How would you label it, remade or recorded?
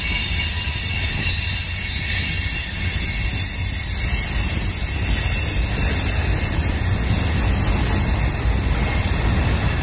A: recorded